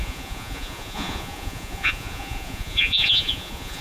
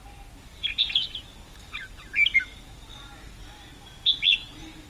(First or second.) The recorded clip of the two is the second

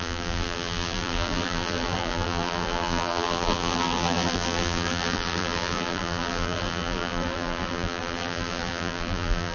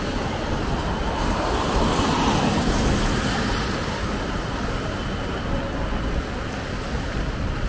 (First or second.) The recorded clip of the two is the second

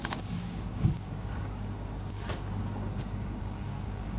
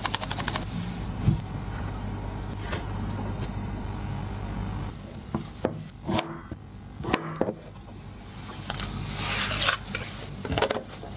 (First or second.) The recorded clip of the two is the second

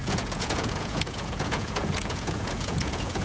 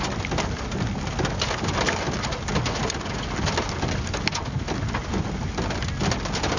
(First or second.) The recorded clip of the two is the second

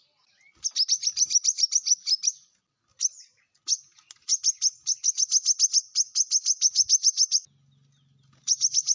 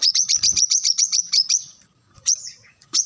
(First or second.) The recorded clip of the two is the first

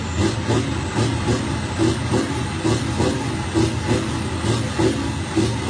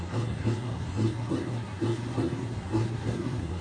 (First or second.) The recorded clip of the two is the first